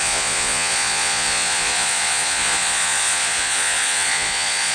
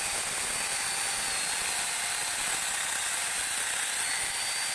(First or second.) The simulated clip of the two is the first